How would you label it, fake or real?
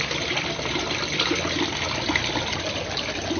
real